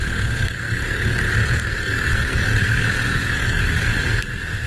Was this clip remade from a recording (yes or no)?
yes